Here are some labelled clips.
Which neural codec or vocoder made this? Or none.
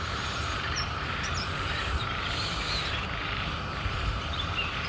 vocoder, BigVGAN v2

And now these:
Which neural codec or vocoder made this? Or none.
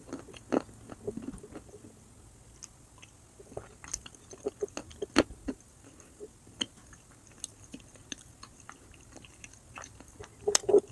none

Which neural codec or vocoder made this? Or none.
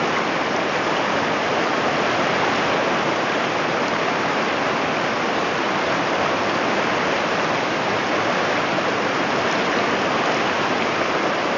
none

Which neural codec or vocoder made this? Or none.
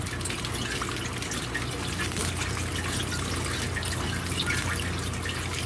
none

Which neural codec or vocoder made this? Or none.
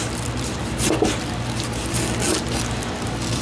none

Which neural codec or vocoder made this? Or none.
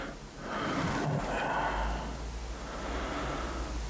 none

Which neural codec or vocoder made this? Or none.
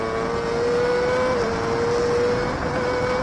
none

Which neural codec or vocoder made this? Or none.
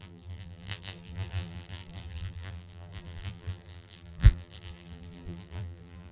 vocoder, BigVGAN v2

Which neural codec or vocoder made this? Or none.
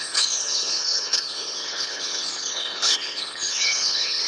codec, HILCodec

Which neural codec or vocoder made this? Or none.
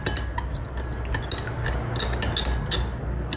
none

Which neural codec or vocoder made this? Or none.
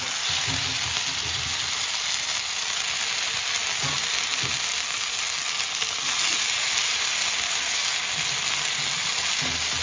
none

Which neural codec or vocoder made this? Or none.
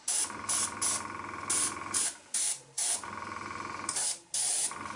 none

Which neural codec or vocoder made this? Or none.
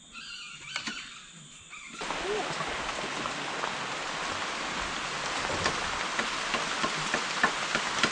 none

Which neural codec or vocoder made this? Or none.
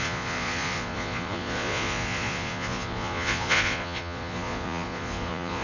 vocoder, Vocos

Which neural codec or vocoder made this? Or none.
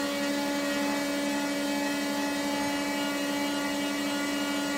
none